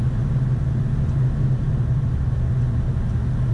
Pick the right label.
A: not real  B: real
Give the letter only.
B